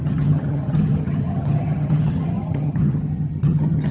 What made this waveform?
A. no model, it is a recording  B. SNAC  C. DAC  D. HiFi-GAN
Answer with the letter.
D